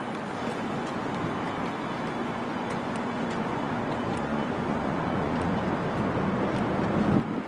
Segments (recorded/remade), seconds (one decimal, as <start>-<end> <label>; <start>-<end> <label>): 0.0-0.5 recorded; 0.5-1.0 remade; 1.0-2.2 recorded; 2.2-5.7 remade; 5.7-7.5 recorded